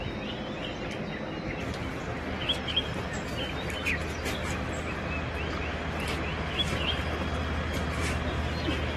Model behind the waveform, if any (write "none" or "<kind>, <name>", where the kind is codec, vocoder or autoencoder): none